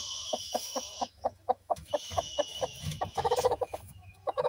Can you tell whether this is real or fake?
fake